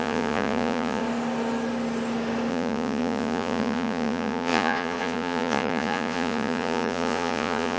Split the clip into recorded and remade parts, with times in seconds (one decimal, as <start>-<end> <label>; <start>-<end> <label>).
0.0-1.0 remade; 1.0-2.5 recorded; 2.5-7.8 remade